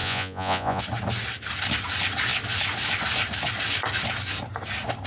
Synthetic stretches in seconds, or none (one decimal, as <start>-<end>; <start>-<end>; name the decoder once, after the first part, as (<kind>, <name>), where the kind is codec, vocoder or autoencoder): 0.0-0.8 (vocoder, Vocos)